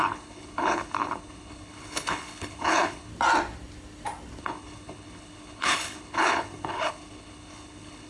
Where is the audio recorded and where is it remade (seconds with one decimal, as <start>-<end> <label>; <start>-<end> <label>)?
0.0-3.1 remade; 3.1-4.4 recorded; 4.4-8.1 remade